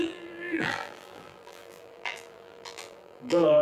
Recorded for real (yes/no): no